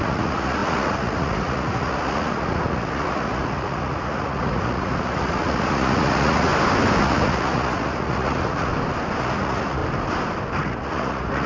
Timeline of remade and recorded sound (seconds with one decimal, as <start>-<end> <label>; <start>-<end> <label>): 0.0-6.5 remade; 6.5-7.0 recorded; 7.0-8.7 remade; 8.7-9.2 recorded; 9.2-9.8 remade; 9.8-10.6 recorded; 10.6-11.5 remade